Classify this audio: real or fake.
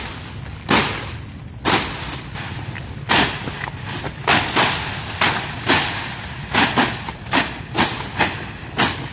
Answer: real